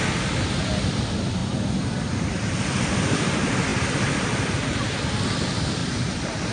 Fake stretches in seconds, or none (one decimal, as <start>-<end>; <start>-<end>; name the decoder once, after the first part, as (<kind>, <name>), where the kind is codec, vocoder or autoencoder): 5.8-6.5 (vocoder, BigVGAN v2)